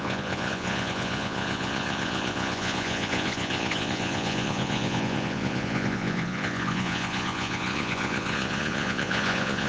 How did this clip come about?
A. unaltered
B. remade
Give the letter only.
B